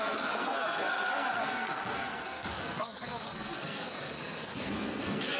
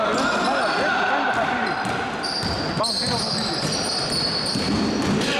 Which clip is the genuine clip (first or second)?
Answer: second